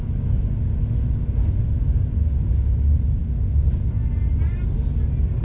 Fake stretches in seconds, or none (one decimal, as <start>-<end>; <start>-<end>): none